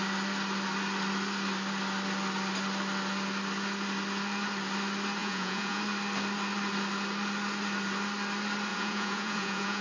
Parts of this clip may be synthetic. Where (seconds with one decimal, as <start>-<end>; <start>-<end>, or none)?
5.2-5.8; 8.7-9.8